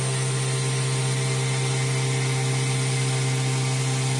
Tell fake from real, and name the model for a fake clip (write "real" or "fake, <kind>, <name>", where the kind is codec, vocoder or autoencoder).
real